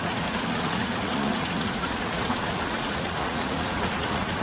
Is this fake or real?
fake